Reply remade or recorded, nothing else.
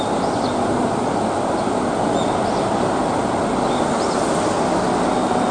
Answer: recorded